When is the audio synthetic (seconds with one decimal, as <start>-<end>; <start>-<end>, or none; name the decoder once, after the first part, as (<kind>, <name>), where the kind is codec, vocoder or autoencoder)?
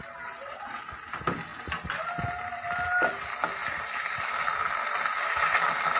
none